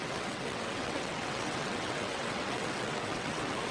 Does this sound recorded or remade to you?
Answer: remade